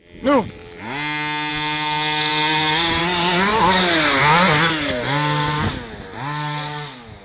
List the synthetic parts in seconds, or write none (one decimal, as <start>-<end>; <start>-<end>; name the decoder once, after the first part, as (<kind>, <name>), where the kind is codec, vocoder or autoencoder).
none